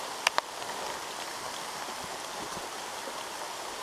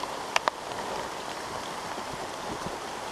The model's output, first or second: second